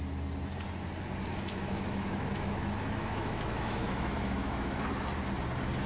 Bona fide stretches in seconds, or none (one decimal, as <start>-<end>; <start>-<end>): 0.0-1.3; 4.8-5.9